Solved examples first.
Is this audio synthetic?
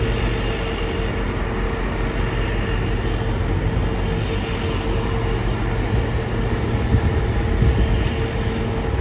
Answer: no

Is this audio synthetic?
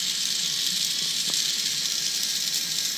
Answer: yes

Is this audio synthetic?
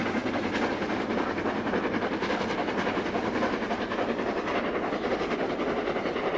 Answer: no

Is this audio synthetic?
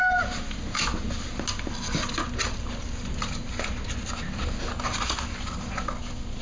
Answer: no